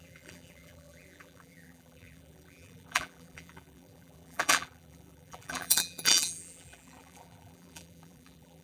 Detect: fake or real fake